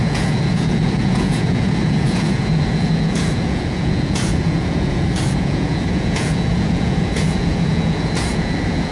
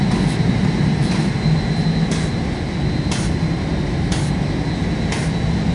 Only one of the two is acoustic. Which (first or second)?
second